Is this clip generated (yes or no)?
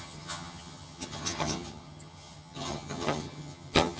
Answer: yes